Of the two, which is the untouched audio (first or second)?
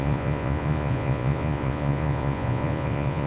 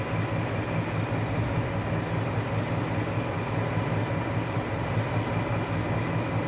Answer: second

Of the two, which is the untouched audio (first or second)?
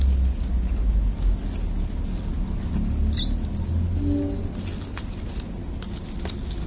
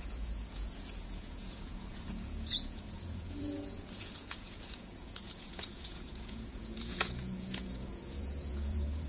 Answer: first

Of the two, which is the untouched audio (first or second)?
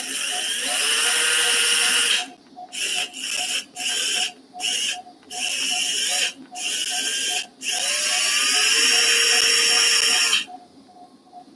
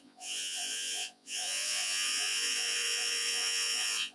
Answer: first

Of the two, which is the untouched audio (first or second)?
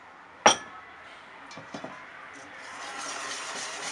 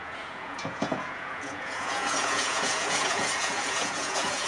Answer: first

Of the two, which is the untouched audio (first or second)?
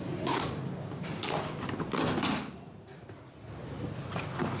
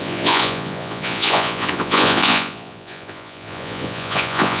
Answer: first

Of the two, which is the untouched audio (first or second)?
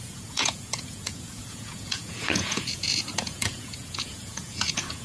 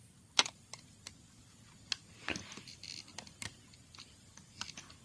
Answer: second